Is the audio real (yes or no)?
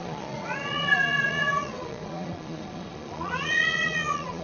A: no